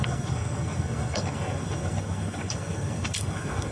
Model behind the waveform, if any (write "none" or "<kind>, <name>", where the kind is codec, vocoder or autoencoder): codec, SNAC